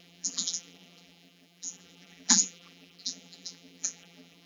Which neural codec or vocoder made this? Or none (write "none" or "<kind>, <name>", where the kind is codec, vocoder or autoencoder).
vocoder, BigVGAN v2